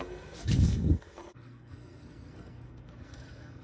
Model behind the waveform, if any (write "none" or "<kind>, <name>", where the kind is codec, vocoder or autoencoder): codec, SNAC